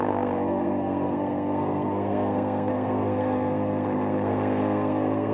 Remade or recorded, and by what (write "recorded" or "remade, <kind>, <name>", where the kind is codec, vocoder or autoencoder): remade, codec, SNAC